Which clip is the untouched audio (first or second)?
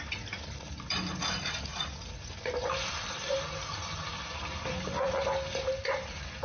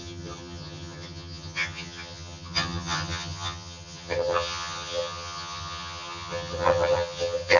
first